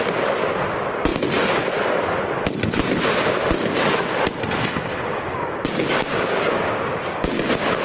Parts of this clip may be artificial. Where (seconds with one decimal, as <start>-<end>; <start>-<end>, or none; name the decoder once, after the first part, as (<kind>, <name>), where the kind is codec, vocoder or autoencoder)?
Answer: 5.1-7.8 (codec, DAC)